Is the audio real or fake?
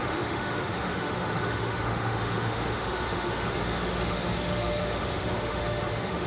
fake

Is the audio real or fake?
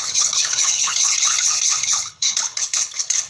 fake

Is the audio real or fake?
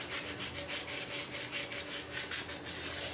real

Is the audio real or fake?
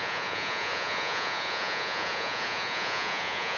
fake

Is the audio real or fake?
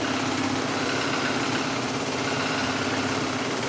fake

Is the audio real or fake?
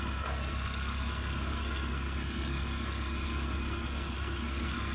fake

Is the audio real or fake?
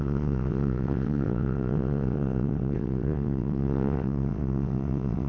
fake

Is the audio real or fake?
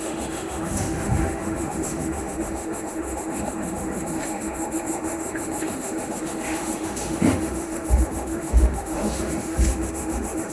fake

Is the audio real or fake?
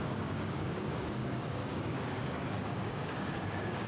fake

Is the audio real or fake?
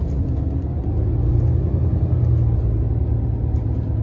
real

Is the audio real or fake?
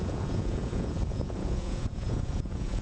fake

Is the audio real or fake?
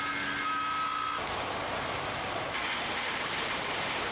real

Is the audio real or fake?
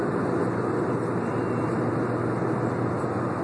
real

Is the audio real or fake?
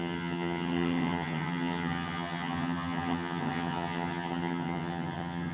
fake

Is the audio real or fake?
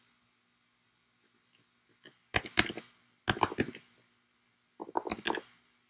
real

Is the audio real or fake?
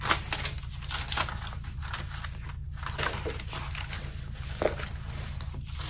real